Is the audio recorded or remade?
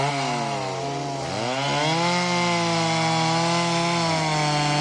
recorded